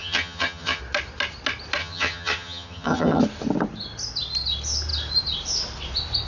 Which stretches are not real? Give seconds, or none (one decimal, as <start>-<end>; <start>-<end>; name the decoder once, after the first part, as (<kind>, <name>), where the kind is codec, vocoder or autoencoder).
0.0-0.8 (vocoder, HiFi-GAN); 1.8-3.2